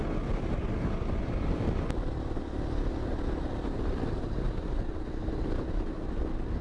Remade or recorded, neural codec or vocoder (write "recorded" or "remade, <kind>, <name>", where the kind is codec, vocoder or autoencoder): recorded